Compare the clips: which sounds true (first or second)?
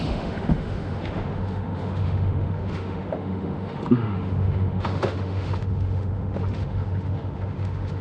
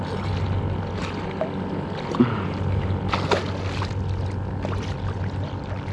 second